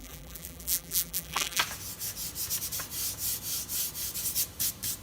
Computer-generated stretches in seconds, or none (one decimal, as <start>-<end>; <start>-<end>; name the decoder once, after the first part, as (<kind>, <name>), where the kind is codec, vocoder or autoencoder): 0.0-1.6 (vocoder, BigVGAN v2)